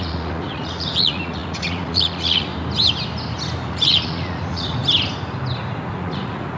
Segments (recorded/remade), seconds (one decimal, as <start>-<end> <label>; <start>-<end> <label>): 0.0-2.5 remade; 2.5-3.7 recorded; 3.7-4.8 remade; 4.8-5.9 recorded; 5.9-6.6 remade